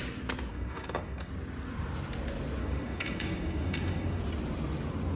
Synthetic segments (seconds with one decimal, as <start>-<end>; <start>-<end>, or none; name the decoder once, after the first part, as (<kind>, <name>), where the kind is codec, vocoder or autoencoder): 0.5-1.3 (codec, DAC); 2.6-4.2